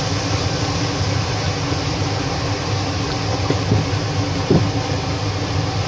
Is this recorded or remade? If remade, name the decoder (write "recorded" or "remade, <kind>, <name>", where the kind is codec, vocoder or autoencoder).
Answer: recorded